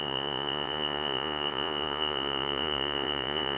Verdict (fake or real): fake